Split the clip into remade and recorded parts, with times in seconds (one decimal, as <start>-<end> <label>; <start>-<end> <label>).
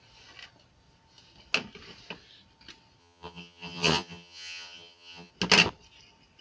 0.0-3.0 recorded; 3.0-5.3 remade; 5.3-6.4 recorded